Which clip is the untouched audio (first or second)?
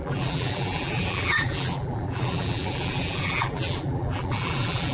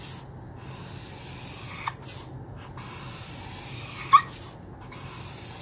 second